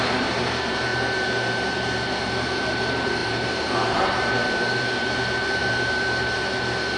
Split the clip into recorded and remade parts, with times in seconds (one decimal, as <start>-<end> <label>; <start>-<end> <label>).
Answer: 0.0-7.0 remade